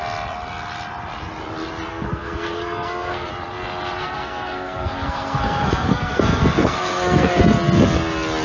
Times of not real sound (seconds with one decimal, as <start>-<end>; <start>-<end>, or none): 1.9-3.3; 4.0-7.4